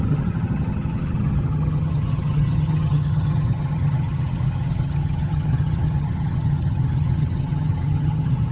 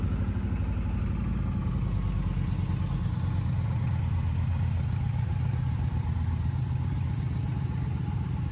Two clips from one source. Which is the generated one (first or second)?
first